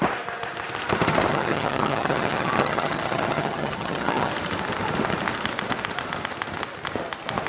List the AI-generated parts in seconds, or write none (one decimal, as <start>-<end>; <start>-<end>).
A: 1.3-4.3